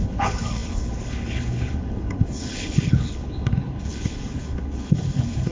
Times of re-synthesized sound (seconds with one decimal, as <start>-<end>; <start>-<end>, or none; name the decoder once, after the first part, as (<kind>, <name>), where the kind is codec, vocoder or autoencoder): 0.0-5.5 (codec, HILCodec)